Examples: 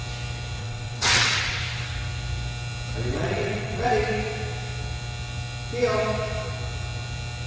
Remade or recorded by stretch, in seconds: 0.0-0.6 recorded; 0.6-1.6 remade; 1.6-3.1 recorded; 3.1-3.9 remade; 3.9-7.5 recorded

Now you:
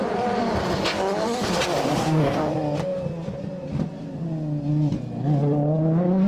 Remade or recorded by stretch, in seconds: 0.0-2.0 recorded; 2.0-2.5 remade; 2.5-6.3 recorded

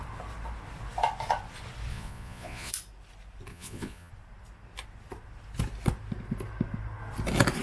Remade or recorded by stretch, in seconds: 0.0-1.9 recorded; 1.9-2.7 remade; 2.7-3.5 recorded; 3.5-4.1 remade; 4.1-7.6 recorded